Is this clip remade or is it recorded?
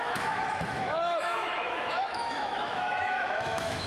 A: remade